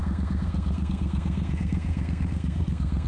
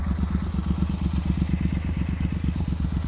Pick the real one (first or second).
second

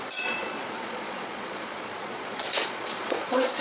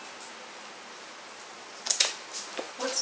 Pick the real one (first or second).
second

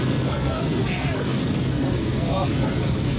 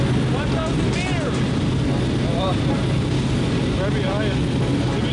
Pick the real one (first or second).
second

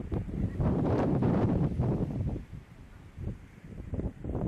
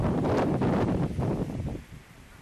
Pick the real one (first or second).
second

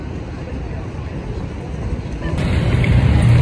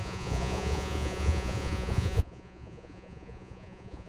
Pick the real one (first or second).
first